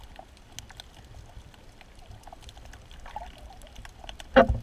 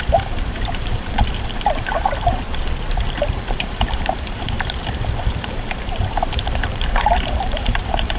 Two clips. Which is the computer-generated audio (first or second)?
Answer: second